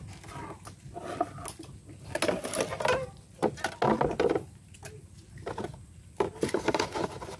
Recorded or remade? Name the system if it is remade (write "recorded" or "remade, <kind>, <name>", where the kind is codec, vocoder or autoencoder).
recorded